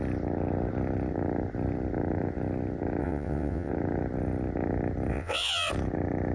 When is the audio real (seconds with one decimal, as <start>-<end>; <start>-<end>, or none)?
0.0-3.0; 3.7-5.1; 5.7-6.3